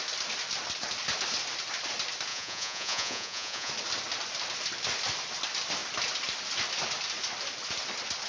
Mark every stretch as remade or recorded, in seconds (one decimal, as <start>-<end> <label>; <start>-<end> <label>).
0.0-2.3 recorded; 2.3-3.7 remade; 3.7-8.3 recorded